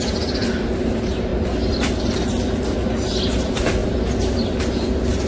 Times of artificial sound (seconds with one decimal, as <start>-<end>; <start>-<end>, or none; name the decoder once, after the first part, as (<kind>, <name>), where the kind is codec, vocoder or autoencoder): none